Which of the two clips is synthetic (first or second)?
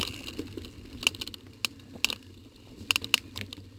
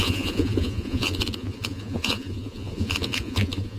second